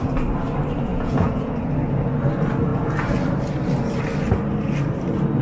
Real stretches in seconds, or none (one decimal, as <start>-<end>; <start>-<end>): 0.0-0.9; 1.5-5.4